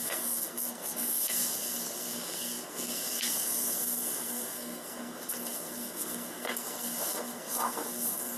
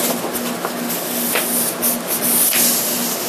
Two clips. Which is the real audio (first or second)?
second